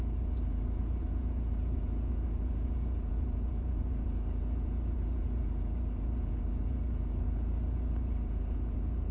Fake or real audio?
fake